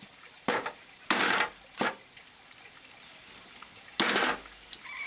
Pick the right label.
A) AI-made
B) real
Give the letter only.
B